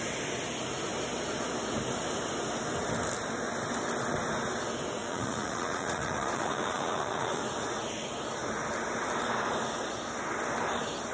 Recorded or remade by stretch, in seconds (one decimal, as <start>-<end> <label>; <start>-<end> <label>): 0.0-5.0 recorded; 5.0-7.4 remade; 7.4-11.1 recorded